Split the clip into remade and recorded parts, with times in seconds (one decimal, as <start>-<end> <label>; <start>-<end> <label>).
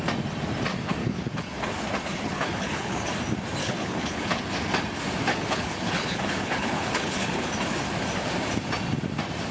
0.0-1.0 recorded; 1.0-1.7 remade; 1.7-2.1 recorded; 2.1-3.1 remade; 3.1-3.6 recorded; 3.6-4.4 remade; 4.4-5.3 recorded; 5.3-7.5 remade; 7.5-9.5 recorded